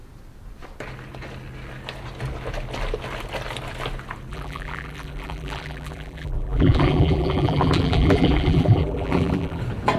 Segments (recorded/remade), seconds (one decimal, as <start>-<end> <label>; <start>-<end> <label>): 0.0-4.3 recorded; 4.3-9.6 remade; 9.6-10.0 recorded